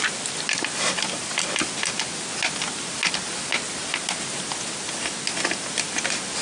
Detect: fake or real real